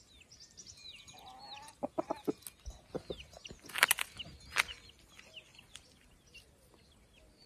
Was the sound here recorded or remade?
recorded